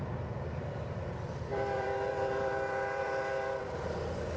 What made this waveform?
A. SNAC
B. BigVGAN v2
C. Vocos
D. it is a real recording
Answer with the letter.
B